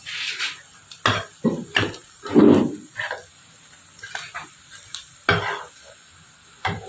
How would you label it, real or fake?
real